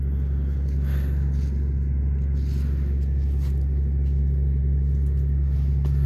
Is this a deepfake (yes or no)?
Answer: no